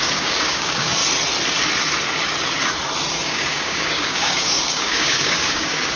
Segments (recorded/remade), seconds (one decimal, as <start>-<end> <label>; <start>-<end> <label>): 0.0-1.0 remade; 1.0-3.1 recorded; 3.1-6.0 remade